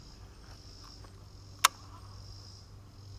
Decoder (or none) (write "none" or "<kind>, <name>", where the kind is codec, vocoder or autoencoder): none